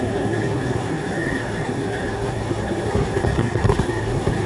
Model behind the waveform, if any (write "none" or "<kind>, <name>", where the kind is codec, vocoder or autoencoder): codec, SNAC